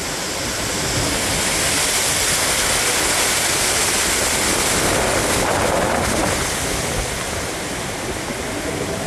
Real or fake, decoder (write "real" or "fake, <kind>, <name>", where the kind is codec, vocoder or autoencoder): real